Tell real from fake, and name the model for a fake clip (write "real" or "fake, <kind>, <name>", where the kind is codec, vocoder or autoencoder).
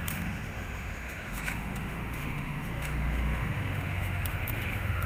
fake, autoencoder, DAC-VAE